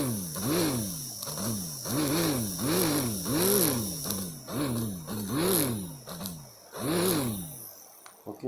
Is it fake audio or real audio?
real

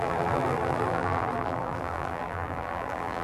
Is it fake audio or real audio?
fake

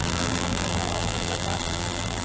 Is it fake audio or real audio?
fake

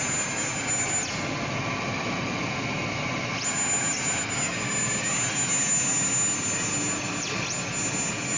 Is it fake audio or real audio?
real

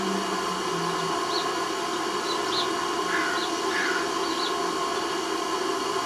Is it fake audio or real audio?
real